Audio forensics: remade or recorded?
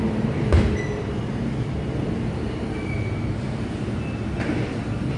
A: recorded